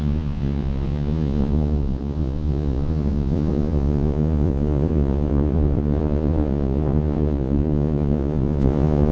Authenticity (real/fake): fake